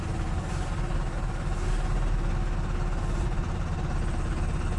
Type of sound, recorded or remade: recorded